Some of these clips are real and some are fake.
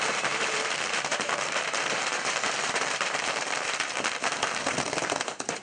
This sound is fake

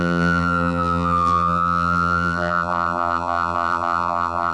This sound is fake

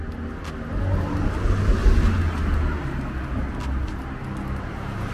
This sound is real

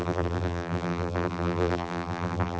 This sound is fake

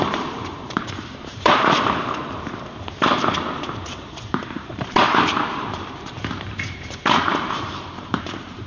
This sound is fake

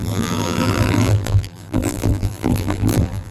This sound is fake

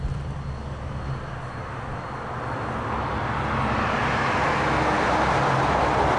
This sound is real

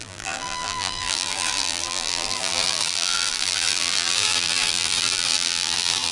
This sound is fake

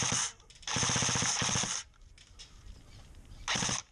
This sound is real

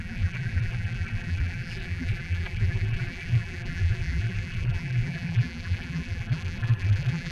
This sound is fake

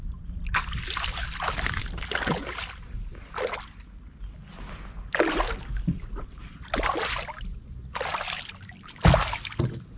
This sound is real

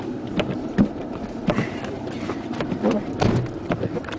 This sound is fake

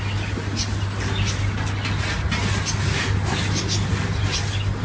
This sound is real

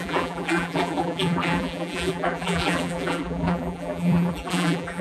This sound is fake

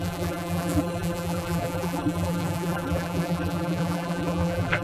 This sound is fake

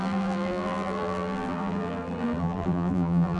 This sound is fake